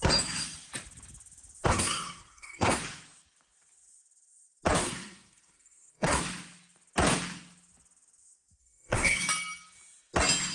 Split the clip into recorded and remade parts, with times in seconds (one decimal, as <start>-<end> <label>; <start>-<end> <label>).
0.0-1.7 recorded; 1.7-2.8 remade; 2.8-4.8 recorded; 4.8-6.2 remade; 6.2-8.6 recorded; 8.6-9.2 remade; 9.2-10.5 recorded